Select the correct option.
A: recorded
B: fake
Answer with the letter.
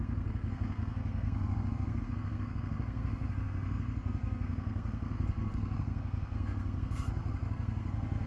B